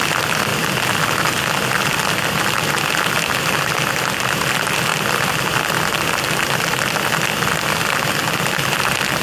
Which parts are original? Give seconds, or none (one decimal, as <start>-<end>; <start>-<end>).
0.0-9.2